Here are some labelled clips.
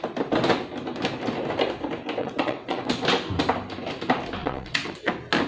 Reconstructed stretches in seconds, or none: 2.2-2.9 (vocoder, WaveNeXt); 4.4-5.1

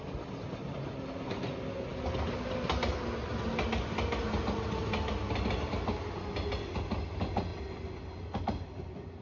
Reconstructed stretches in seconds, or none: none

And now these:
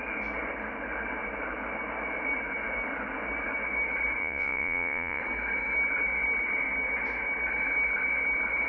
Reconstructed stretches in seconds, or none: 4.2-5.2 (vocoder, Vocos)

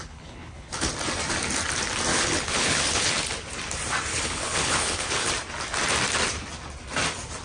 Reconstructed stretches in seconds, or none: 0.0-0.9 (codec, HILCodec); 2.1-3.1; 4.1-5.3

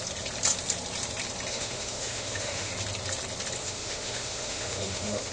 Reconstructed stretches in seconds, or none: 1.5-2.7 (autoencoder, DAC-VAE); 3.6-5.3